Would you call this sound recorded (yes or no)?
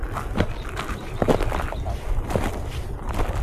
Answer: yes